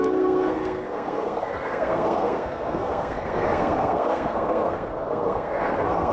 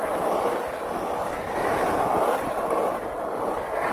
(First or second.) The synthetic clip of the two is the first